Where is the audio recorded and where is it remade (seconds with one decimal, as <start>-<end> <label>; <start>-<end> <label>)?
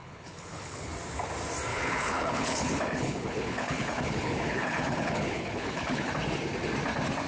0.0-0.9 remade; 0.9-1.7 recorded; 1.7-6.1 remade; 6.1-7.3 recorded